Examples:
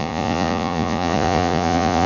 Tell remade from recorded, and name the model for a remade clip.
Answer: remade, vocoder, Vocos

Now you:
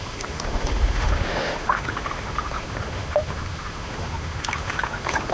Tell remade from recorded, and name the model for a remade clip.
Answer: remade, autoencoder, DAC-VAE